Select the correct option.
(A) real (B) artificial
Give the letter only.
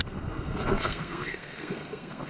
B